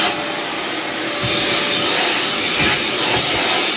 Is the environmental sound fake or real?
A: real